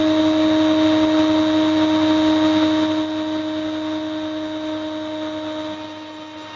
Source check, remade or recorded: recorded